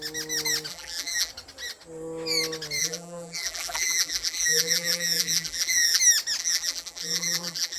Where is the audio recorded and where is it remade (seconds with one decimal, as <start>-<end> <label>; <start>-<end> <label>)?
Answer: 0.0-0.7 recorded; 0.7-1.3 remade; 1.3-2.8 recorded; 2.8-6.0 remade; 6.0-6.4 recorded; 6.4-7.8 remade

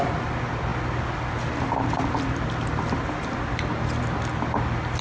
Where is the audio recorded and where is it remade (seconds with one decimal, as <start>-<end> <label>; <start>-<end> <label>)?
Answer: 0.0-5.0 recorded

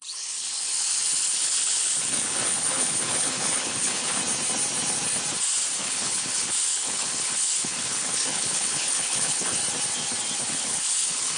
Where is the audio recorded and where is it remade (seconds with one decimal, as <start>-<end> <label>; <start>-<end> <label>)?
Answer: 0.0-4.2 remade; 4.2-5.8 recorded; 5.8-9.6 remade; 9.6-10.5 recorded; 10.5-11.4 remade

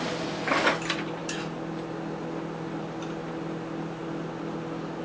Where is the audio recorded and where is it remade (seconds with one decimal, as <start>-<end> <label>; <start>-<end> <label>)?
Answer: 0.0-5.0 recorded

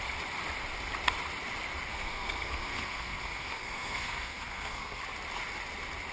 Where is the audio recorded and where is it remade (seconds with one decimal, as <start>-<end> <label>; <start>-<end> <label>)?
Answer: 0.0-1.9 recorded; 1.9-5.0 remade; 5.0-6.1 recorded